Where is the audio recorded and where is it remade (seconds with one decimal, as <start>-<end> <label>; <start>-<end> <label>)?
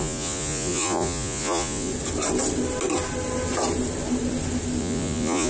0.0-1.9 remade; 1.9-4.8 recorded; 4.8-5.5 remade